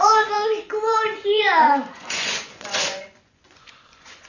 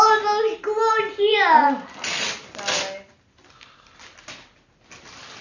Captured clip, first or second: second